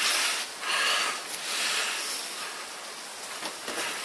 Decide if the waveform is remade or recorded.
recorded